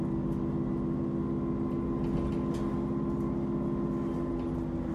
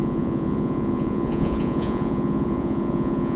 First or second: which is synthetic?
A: second